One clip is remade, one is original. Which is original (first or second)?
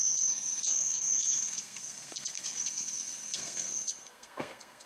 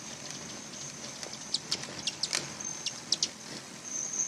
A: second